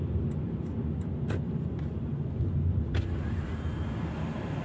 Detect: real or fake real